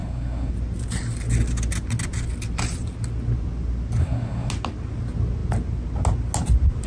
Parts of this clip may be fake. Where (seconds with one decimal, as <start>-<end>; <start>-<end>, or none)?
0.0-0.5; 4.0-4.5